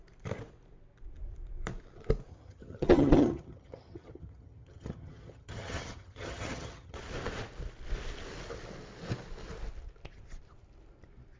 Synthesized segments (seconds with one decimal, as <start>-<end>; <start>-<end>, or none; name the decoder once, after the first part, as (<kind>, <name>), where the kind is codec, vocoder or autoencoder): 2.3-7.0 (vocoder, HiFi-GAN)